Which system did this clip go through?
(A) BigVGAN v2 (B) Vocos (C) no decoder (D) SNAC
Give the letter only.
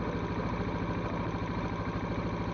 C